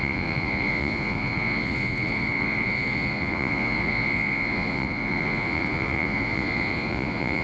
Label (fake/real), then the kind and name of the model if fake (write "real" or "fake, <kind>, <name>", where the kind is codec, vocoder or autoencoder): fake, vocoder, Vocos